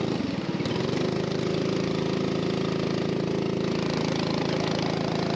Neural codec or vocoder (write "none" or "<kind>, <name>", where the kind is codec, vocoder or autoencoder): none